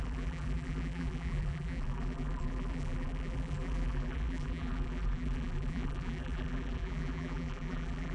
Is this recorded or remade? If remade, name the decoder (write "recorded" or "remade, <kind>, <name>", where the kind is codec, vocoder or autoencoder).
remade, vocoder, BigVGAN v2